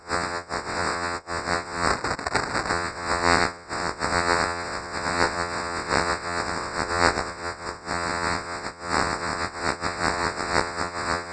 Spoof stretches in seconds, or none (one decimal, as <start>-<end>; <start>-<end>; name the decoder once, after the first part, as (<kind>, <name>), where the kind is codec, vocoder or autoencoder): 0.0-1.9 (vocoder, WaveNeXt); 2.7-11.3